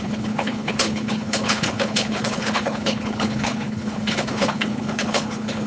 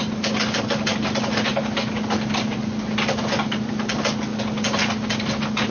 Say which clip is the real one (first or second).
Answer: second